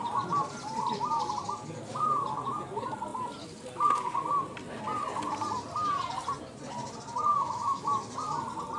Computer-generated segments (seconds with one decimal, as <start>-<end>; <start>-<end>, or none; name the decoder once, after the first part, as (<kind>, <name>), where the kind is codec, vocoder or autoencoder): 7.3-7.9 (autoencoder, DAC-VAE)